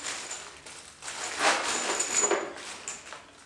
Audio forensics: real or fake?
real